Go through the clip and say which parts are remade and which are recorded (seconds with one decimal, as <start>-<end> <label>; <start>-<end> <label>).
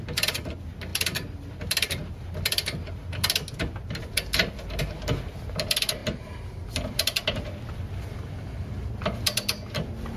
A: 0.0-10.2 recorded